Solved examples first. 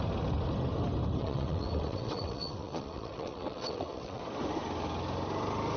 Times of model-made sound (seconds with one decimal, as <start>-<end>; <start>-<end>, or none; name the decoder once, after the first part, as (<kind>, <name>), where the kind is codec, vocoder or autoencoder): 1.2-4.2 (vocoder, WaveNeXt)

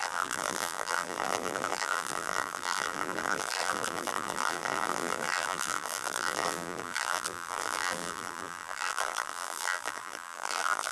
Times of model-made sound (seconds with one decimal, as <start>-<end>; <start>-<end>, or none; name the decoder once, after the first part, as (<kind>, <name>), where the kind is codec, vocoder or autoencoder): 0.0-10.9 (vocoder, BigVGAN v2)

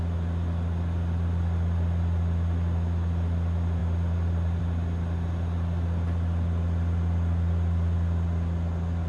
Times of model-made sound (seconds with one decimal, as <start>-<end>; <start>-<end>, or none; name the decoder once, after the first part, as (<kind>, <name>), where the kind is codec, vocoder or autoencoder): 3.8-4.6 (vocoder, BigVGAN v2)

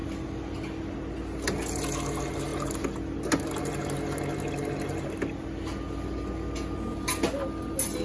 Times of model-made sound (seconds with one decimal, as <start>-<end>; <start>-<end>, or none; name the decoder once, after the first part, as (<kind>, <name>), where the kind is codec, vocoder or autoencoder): none

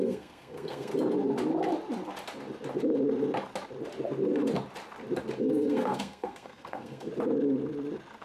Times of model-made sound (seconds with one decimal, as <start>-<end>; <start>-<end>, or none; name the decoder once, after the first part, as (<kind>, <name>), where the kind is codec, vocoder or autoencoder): 0.0-0.9 (codec, SNAC); 5.4-7.1